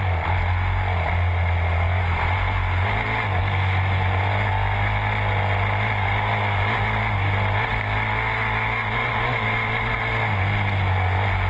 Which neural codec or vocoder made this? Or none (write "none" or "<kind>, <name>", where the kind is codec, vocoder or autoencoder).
none